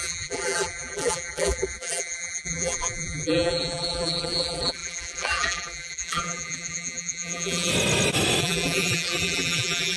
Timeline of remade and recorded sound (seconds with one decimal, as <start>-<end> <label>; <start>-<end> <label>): 0.0-7.7 remade; 7.7-8.4 recorded; 8.4-10.0 remade